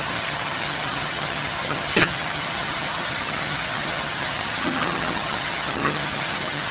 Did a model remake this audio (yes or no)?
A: yes